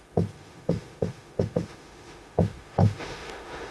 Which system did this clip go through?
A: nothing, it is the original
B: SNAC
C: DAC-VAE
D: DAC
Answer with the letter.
C